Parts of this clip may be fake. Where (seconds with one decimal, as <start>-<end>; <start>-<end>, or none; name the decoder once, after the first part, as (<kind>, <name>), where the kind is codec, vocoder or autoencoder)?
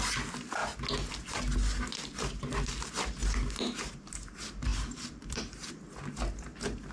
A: 4.7-5.7 (vocoder, BigVGAN v2)